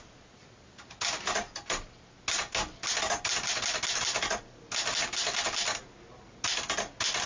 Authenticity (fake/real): real